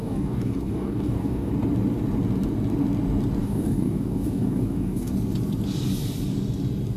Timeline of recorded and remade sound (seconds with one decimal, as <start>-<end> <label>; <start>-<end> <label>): 0.0-1.5 remade; 1.5-3.4 recorded; 3.4-5.1 remade; 5.1-7.0 recorded

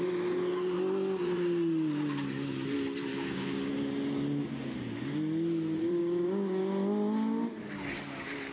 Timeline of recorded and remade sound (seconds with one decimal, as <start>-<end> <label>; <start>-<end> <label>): 0.0-3.1 recorded; 3.1-3.7 remade; 3.7-6.0 recorded; 6.0-6.7 remade; 6.7-8.5 recorded

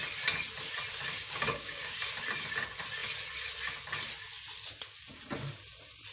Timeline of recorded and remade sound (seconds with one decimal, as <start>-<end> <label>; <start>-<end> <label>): 0.0-1.2 recorded; 1.2-2.0 remade; 2.0-6.1 recorded

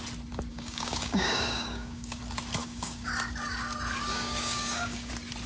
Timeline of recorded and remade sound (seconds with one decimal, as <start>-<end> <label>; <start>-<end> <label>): 0.0-0.5 recorded; 0.5-2.2 remade; 2.2-2.6 recorded; 2.6-3.1 remade; 3.1-4.1 recorded; 4.1-5.1 remade; 5.1-5.5 recorded

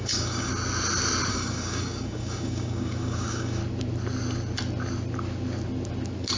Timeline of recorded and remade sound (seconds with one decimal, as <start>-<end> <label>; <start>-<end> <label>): 0.0-0.5 remade; 0.5-1.3 recorded; 1.3-3.6 remade; 3.6-6.4 recorded

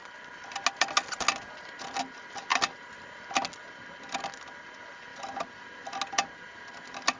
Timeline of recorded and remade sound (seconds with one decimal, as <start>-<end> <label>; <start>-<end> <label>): 0.0-7.2 recorded

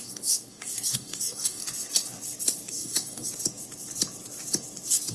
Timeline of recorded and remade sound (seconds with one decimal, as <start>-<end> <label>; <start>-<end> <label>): 0.0-1.6 remade; 1.6-2.7 recorded; 2.7-3.3 remade; 3.3-5.1 recorded